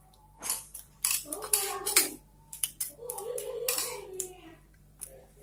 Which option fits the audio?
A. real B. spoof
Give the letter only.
B